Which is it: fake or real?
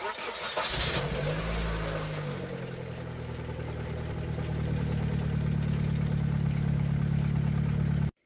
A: real